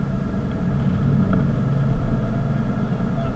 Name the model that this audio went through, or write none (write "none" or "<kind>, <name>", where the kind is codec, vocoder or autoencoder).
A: none